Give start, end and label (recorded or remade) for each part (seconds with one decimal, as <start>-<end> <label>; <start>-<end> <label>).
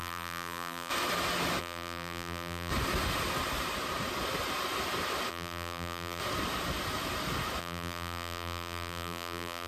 0.0-0.9 remade; 0.9-1.6 recorded; 1.6-2.7 remade; 2.7-5.3 recorded; 5.3-6.2 remade; 6.2-7.6 recorded; 7.6-9.7 remade